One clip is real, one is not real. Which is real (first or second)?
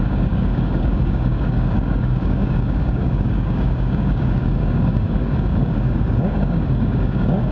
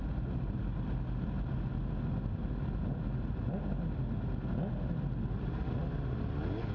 second